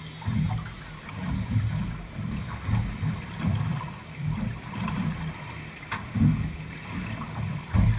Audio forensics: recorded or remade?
remade